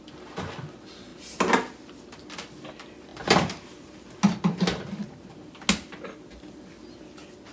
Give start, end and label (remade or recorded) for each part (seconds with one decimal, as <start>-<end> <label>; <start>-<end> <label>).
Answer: 0.0-3.1 recorded; 3.1-4.1 remade; 4.1-7.5 recorded